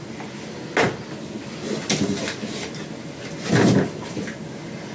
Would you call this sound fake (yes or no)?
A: no